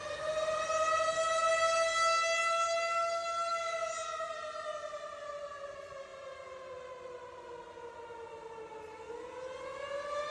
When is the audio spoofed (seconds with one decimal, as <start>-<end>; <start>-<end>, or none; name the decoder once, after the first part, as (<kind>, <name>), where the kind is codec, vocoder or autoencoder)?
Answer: none